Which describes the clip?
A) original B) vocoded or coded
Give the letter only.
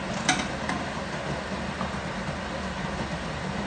A